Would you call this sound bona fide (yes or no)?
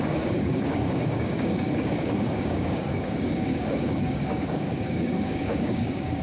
no